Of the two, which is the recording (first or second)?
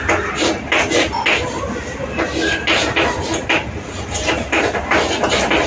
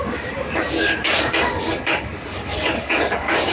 first